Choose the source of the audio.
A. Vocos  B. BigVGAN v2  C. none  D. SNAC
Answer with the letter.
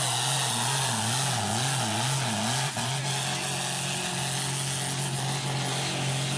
C